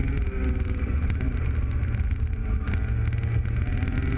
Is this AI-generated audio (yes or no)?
no